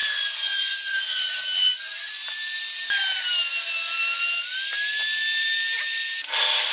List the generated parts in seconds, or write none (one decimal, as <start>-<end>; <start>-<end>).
0.0-2.1